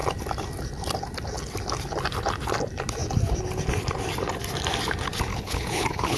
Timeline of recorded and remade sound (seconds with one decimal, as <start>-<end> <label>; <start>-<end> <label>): 0.0-5.3 recorded; 5.3-6.2 remade